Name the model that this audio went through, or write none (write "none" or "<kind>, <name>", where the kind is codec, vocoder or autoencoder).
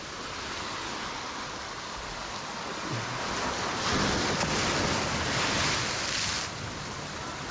none